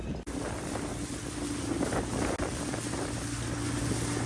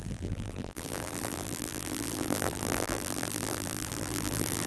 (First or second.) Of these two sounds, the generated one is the second